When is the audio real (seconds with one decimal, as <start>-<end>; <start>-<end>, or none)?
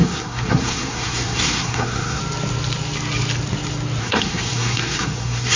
2.2-4.0